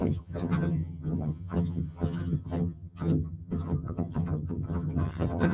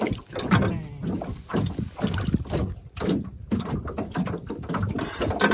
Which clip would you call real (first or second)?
second